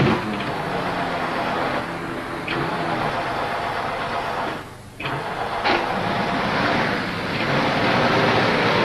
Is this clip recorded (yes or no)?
yes